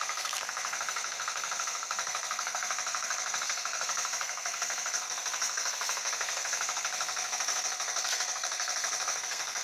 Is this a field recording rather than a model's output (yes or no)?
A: no